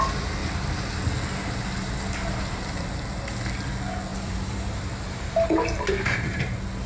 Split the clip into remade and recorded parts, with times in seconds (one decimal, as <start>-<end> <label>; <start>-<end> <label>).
0.0-4.1 recorded; 4.1-6.4 remade; 6.4-6.9 recorded